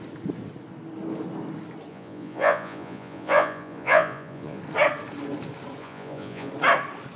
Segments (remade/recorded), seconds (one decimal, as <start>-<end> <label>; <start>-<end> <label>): 0.0-1.9 recorded; 1.9-4.6 remade; 4.6-5.8 recorded; 5.8-6.5 remade; 6.5-7.2 recorded